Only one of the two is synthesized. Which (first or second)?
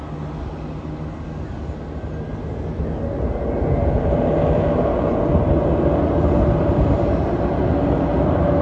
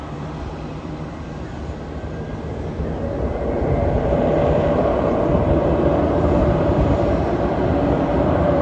second